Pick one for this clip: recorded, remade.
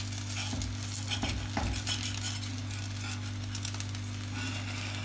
recorded